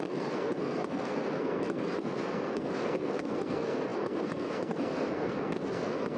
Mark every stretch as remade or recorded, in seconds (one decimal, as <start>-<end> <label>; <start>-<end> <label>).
0.0-6.2 remade

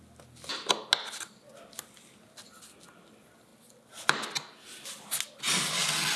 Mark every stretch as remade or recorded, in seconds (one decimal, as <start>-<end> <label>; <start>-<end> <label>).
0.0-6.2 recorded